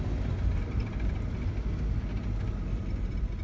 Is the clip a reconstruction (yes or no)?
no